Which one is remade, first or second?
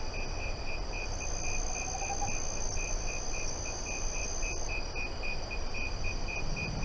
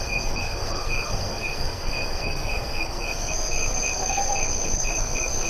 second